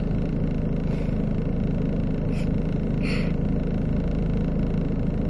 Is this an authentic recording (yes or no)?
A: yes